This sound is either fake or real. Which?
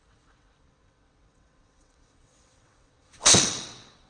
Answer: fake